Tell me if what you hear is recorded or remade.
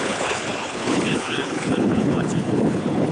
remade